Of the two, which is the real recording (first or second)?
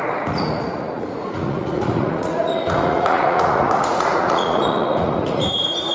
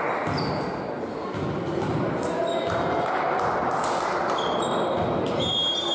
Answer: second